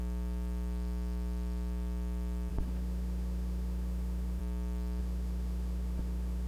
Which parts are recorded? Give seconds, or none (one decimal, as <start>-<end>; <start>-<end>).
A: 0.0-2.5; 4.4-5.0